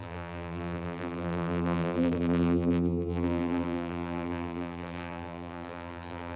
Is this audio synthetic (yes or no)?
yes